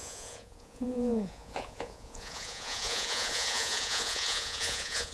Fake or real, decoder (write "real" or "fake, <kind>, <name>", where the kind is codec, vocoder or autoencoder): fake, vocoder, Vocos